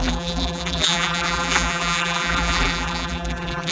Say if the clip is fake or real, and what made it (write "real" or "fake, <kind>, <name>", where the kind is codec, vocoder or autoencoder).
fake, vocoder, BigVGAN v2